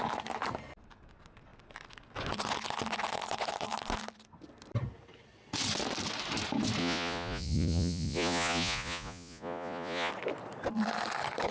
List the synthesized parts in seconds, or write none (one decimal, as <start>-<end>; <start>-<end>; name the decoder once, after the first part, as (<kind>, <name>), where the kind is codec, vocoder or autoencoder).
6.8-10.1 (vocoder, Vocos)

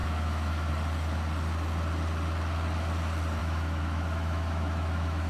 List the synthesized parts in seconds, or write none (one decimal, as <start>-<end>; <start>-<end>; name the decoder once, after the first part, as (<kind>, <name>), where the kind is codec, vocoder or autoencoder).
0.0-0.7 (autoencoder, DAC-VAE); 3.4-5.3

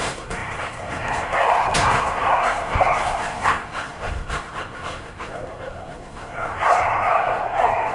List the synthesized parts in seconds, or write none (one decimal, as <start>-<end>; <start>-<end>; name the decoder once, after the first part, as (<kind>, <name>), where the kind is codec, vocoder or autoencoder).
0.0-7.9 (codec, SNAC)

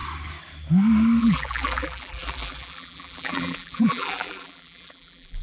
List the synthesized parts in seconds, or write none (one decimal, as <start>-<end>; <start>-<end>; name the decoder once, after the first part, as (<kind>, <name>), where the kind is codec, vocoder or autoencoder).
1.2-5.4 (vocoder, BigVGAN v2)

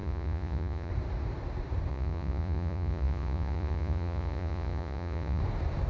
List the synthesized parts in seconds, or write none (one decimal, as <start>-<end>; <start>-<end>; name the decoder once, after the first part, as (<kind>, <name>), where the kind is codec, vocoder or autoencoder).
0.0-0.9 (vocoder, Vocos); 1.9-5.4

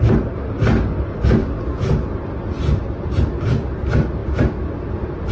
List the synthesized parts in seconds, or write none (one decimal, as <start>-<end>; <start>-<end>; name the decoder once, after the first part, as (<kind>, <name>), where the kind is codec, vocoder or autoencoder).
none